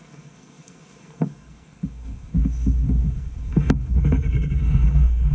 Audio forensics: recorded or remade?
remade